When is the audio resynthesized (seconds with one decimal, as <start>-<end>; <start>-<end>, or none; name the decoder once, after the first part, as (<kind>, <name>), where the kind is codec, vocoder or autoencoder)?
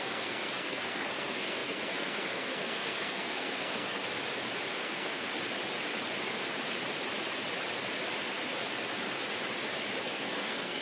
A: 0.0-4.0 (codec, SNAC); 4.7-5.3; 10.0-10.8